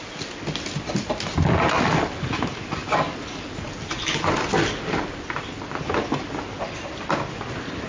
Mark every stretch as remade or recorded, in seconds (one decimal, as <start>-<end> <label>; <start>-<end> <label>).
0.0-7.9 recorded